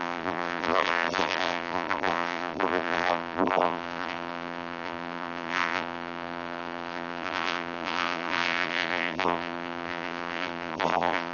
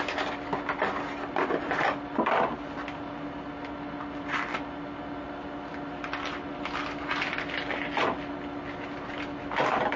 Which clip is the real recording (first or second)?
second